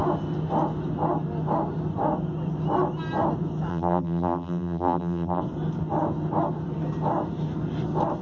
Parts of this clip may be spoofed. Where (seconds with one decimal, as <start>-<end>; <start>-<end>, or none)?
3.7-5.4